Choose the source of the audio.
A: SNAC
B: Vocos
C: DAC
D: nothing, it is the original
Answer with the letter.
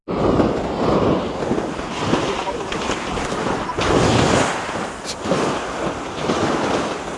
D